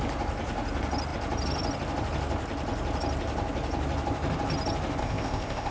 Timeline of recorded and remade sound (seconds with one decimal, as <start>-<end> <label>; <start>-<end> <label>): 0.0-5.0 recorded; 5.0-5.7 remade